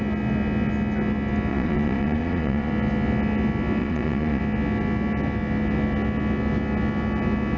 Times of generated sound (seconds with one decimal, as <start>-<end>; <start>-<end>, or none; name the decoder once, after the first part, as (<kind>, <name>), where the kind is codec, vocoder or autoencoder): 1.5-2.7 (vocoder, Vocos); 3.8-4.4